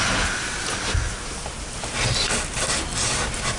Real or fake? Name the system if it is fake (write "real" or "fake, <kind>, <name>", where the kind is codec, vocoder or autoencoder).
real